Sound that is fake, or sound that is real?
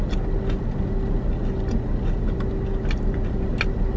real